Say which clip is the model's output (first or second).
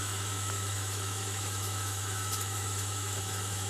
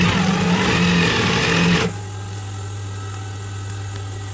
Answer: first